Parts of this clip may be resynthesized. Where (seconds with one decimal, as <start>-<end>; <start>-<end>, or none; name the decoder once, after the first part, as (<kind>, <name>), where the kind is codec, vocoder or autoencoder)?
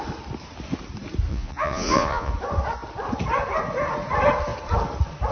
1.3-2.3 (vocoder, Vocos)